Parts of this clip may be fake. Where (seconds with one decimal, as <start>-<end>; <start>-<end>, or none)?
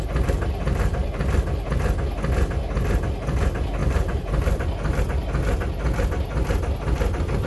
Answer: 1.0-1.7; 3.8-5.0